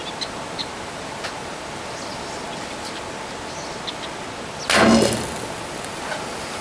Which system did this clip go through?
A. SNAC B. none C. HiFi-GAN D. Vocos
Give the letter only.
B